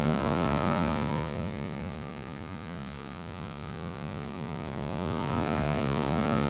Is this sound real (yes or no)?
no